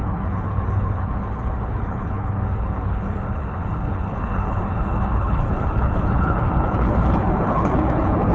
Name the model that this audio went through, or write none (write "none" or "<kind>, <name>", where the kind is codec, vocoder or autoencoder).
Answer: codec, HILCodec